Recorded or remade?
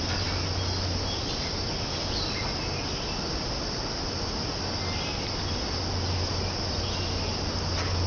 recorded